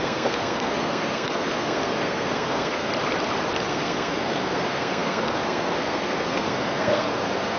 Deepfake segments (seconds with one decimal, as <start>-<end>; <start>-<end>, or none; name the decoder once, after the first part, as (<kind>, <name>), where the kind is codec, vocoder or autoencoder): 0.0-2.9 (codec, SNAC); 3.7-7.6